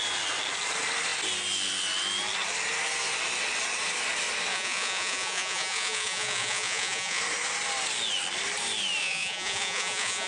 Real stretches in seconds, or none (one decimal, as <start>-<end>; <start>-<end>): 0.0-4.5; 7.2-9.0